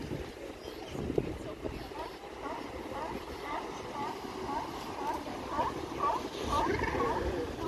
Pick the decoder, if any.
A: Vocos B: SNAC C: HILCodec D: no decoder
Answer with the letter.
D